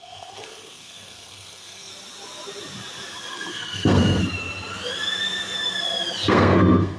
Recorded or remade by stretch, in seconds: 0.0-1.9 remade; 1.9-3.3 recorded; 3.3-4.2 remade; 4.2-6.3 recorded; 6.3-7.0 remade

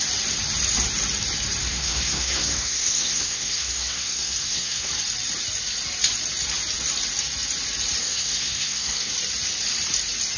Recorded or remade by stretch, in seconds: 0.0-1.6 recorded; 1.6-4.9 remade; 4.9-8.0 recorded; 8.0-9.1 remade; 9.1-10.4 recorded

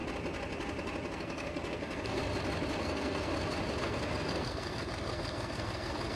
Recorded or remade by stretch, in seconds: 0.0-1.1 recorded; 1.1-2.2 remade; 2.2-2.8 recorded; 2.8-3.3 remade; 3.3-3.8 recorded; 3.8-6.2 remade

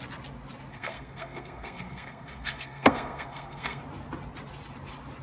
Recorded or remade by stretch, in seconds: 0.0-0.7 recorded; 0.7-3.8 remade; 3.8-5.2 recorded

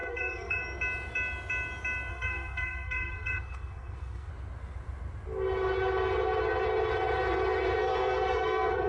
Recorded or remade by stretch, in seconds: 0.0-0.6 remade; 0.6-2.1 recorded; 2.1-4.3 remade; 4.3-7.8 recorded; 7.8-8.9 remade

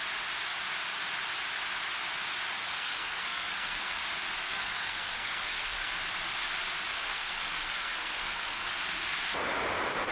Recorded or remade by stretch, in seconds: 0.0-2.6 recorded; 2.6-4.0 remade; 4.0-4.5 recorded; 4.5-5.9 remade; 5.9-6.9 recorded; 6.9-8.7 remade; 8.7-10.1 recorded

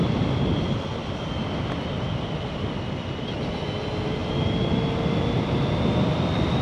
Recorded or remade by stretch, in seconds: 0.0-6.6 recorded